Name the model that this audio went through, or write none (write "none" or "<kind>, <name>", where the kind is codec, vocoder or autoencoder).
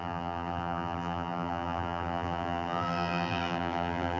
vocoder, BigVGAN v2